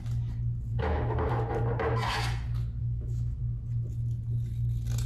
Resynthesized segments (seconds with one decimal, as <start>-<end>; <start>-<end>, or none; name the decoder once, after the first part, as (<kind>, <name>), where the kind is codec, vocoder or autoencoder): 0.7-1.3 (autoencoder, DAC-VAE); 2.8-3.4